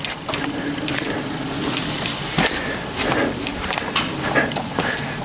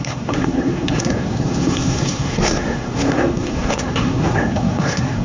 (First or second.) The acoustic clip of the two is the first